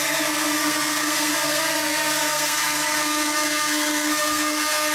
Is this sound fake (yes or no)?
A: yes